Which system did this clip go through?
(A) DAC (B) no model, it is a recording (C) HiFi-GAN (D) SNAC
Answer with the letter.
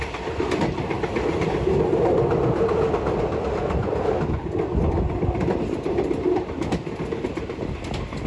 B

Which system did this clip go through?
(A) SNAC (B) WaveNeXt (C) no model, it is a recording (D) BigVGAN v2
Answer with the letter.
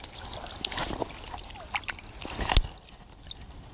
C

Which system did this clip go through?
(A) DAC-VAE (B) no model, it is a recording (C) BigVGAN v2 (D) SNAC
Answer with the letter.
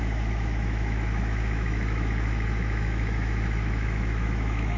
A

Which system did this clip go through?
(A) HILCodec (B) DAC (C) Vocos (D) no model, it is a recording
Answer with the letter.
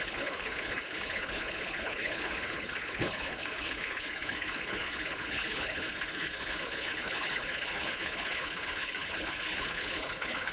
A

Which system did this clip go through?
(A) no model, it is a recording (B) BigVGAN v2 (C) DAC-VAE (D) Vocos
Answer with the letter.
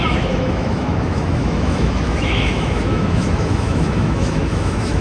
C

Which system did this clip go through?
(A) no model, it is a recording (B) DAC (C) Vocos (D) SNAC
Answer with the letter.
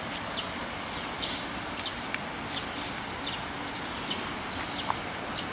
A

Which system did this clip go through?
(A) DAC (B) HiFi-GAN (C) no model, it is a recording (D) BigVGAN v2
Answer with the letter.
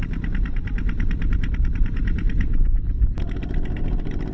C